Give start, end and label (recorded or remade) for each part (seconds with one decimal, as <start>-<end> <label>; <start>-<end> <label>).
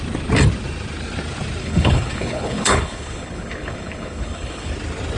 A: 0.0-1.6 recorded; 1.6-4.7 remade; 4.7-5.2 recorded